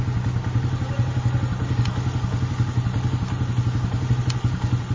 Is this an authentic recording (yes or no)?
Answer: yes